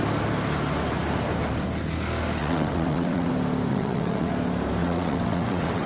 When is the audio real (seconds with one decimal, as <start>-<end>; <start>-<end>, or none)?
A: 0.0-2.4; 3.3-3.7; 4.3-4.8